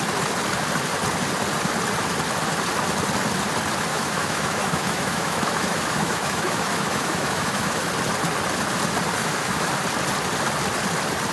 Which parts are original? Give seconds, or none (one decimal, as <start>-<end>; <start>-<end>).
0.0-3.9; 7.9-9.2; 9.7-11.3